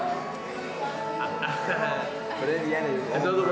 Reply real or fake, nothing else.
real